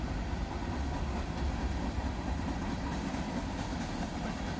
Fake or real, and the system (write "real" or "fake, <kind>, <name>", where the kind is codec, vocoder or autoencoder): real